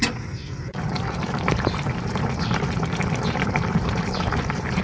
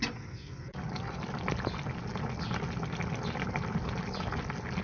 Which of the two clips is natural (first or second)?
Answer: second